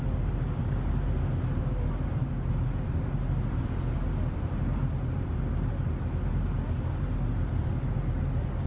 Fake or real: real